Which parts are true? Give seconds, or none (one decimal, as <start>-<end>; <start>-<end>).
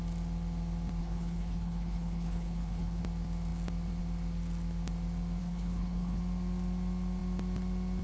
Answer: 0.0-1.0; 3.0-5.4; 6.2-8.0